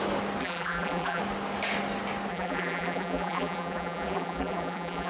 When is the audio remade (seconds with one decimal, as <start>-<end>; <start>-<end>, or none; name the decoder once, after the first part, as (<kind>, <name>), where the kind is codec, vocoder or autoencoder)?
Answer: 0.4-1.2 (vocoder, BigVGAN v2); 2.3-5.1